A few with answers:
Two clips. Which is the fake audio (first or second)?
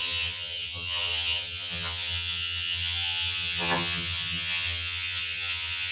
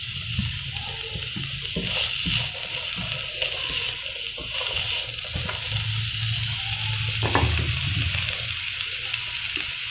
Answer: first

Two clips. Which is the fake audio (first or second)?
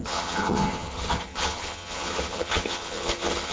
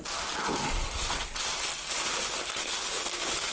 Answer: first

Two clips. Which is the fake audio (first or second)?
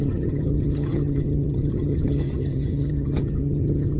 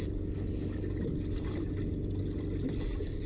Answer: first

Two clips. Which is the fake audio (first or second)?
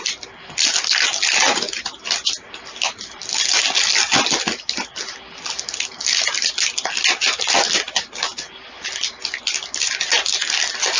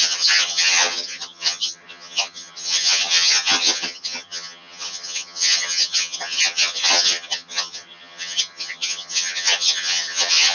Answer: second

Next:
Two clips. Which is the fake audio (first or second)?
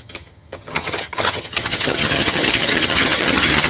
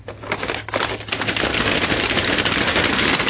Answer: first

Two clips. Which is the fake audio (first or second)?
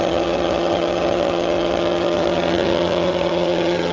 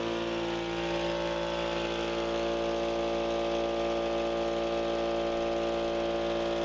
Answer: first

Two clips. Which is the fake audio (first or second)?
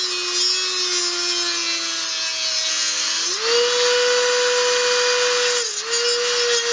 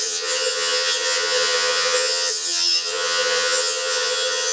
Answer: second